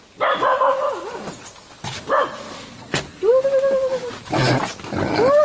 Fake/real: real